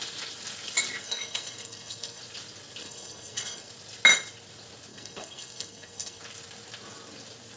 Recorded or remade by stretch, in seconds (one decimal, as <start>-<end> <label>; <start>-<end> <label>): 0.0-1.0 recorded; 1.0-2.2 remade; 2.2-2.8 recorded; 2.8-3.7 remade; 3.7-4.9 recorded; 4.9-6.2 remade; 6.2-7.6 recorded